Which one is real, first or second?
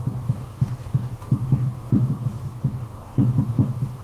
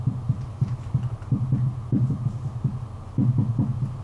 second